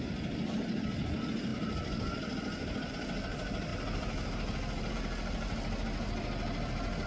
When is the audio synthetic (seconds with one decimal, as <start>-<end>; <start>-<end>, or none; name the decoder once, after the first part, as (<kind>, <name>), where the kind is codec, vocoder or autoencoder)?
none